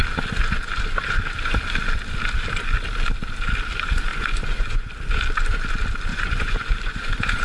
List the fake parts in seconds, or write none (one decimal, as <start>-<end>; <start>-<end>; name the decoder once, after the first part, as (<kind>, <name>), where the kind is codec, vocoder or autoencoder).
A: 4.1-4.9 (vocoder, Vocos); 6.1-7.4